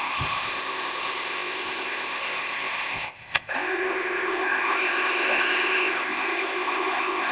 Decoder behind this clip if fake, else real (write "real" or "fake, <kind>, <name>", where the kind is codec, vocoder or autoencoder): fake, codec, ZipCodec